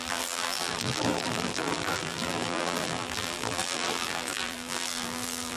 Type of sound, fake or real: fake